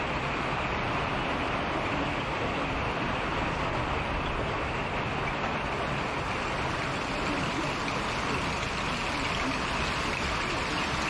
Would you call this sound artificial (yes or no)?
no